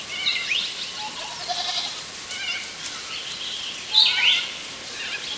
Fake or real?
real